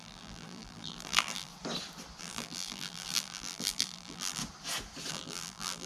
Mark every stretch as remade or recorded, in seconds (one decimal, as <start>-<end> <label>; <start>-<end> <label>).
0.0-1.5 remade; 1.5-2.2 recorded; 2.2-4.4 remade; 4.4-5.1 recorded; 5.1-5.9 remade